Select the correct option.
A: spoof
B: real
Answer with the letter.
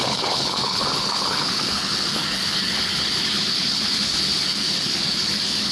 A